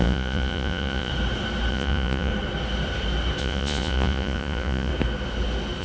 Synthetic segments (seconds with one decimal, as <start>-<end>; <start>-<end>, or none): 0.0-1.1; 1.7-2.3; 3.4-4.9